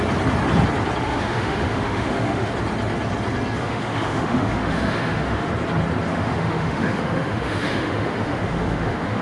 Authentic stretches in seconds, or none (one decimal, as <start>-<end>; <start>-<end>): 0.0-1.0; 2.5-3.6; 5.5-6.1